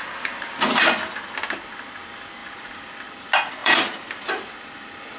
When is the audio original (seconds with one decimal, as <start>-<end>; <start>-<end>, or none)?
0.0-2.4; 2.9-3.6; 4.1-5.2

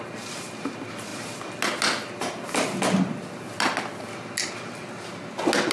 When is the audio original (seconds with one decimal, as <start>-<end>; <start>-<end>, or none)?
0.0-5.7

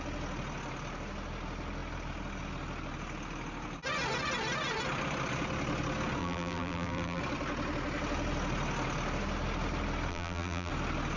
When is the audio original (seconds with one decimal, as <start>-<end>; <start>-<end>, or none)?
0.0-6.2; 7.2-10.1; 10.7-11.2

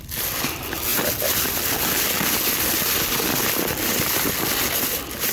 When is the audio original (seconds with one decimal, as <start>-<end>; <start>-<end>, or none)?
0.0-5.3

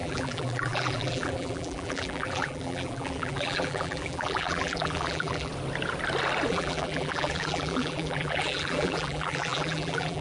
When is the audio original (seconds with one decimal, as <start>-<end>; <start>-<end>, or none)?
5.5-6.5

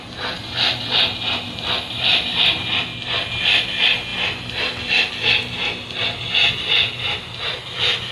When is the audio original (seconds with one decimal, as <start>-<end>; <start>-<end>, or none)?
0.0-8.1

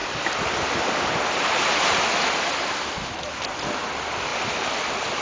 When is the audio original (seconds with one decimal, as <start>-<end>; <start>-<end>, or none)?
0.0-5.2

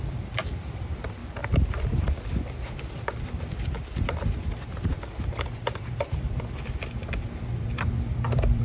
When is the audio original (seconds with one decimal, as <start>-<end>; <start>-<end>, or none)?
1.2-2.0